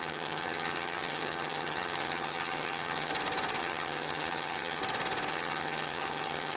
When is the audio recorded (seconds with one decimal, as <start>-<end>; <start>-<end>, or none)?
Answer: 3.1-3.6; 4.8-5.3